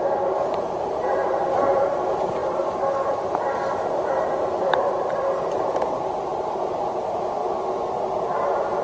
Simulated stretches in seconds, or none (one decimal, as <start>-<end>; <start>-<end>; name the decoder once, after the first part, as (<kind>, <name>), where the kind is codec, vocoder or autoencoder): 0.0-7.4 (vocoder, BigVGAN v2); 8.2-8.8